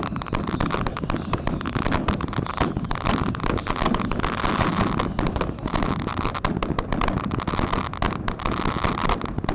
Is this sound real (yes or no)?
yes